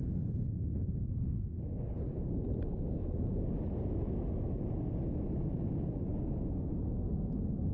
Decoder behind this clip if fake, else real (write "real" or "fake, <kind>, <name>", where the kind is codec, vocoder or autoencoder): real